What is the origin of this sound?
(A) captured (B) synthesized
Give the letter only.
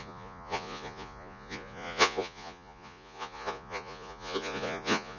B